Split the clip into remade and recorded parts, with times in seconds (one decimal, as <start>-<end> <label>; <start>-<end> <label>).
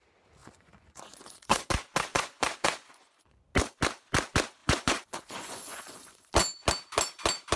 0.0-0.4 recorded; 0.4-1.7 remade; 1.7-2.1 recorded; 2.1-3.4 remade; 3.4-4.6 recorded; 4.6-6.3 remade; 6.3-7.6 recorded